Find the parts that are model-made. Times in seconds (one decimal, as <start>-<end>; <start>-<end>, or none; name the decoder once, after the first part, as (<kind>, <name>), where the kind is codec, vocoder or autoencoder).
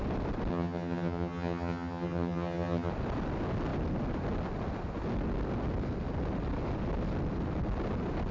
0.5-2.9 (vocoder, HiFi-GAN)